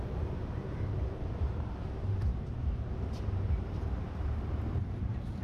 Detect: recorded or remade remade